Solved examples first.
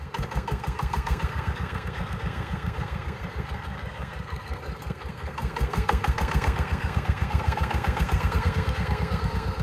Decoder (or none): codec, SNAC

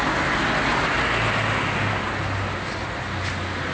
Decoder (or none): none